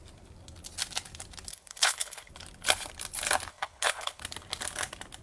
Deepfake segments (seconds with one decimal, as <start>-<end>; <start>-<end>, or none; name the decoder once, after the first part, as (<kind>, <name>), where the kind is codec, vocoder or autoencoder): 1.5-2.3 (codec, HILCodec); 3.5-4.2